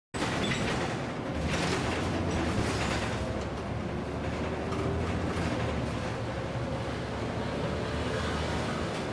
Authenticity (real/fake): real